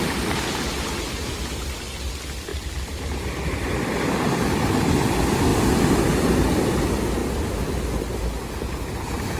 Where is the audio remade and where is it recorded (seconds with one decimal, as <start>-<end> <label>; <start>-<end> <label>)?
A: 0.0-2.5 recorded; 2.5-3.2 remade; 3.2-9.4 recorded